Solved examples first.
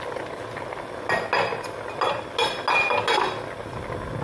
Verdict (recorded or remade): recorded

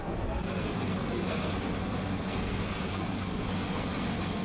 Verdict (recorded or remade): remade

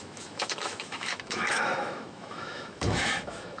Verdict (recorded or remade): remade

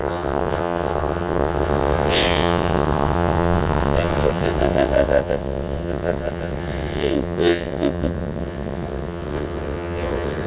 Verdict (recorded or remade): remade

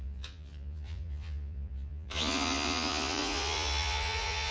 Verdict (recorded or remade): remade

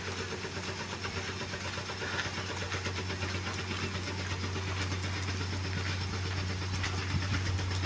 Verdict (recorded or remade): recorded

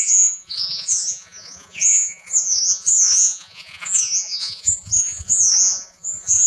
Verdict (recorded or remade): remade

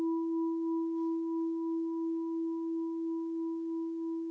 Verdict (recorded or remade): recorded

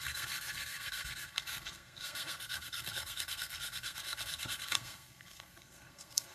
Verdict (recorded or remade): remade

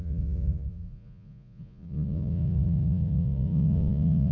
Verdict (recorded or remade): remade